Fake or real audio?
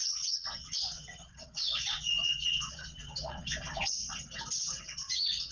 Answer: fake